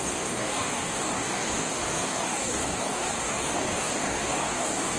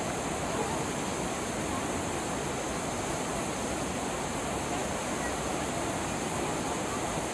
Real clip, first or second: second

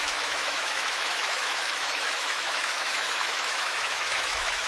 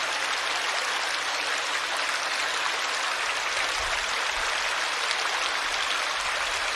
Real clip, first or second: second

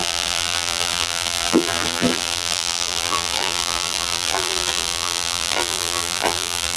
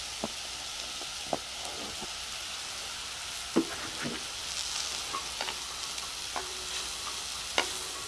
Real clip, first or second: second